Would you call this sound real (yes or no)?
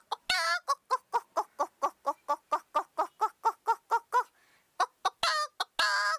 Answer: yes